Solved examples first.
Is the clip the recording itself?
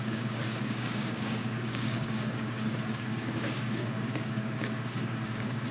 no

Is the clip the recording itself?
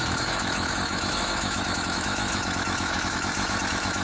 no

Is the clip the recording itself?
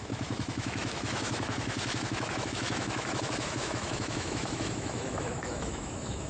no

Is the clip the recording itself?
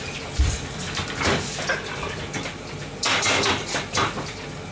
yes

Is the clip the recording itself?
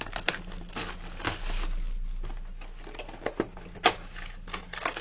yes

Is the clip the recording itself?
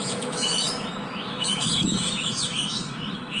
no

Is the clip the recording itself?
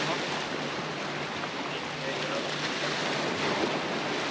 yes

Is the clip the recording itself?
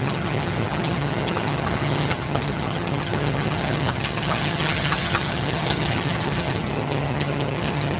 no